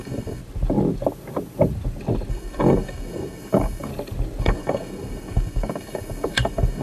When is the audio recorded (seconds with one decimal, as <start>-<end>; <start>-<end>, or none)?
0.4-2.3; 3.9-4.4